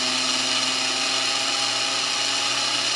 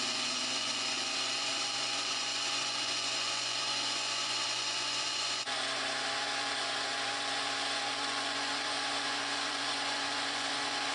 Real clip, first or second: first